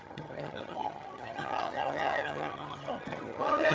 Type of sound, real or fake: fake